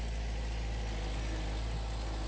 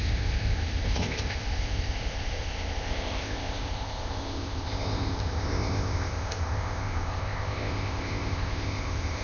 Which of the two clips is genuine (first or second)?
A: first